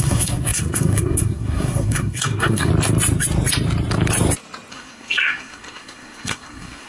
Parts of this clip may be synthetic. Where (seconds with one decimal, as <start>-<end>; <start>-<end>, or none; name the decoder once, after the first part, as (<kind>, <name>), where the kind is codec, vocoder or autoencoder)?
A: 0.0-2.7 (codec, SNAC); 4.7-6.9